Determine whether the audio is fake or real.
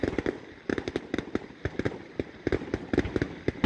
real